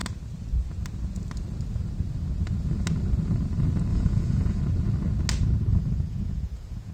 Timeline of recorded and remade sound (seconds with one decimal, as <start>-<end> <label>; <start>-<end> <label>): 0.0-3.9 recorded; 3.9-4.6 remade; 4.6-5.7 recorded; 5.7-6.9 remade